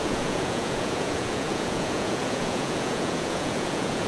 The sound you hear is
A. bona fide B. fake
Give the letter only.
B